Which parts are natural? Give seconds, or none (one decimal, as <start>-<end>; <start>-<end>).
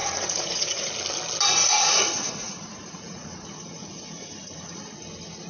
0.9-1.5; 4.8-5.5